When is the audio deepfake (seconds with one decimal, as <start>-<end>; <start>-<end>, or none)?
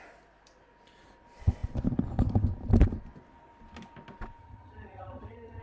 4.4-5.6